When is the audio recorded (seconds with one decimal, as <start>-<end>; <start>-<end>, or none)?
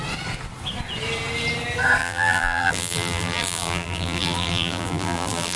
0.0-2.0